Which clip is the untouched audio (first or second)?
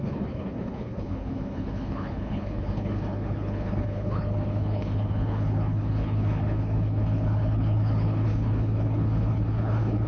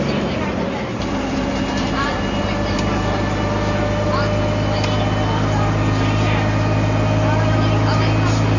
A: second